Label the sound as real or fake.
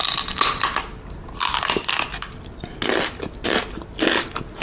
real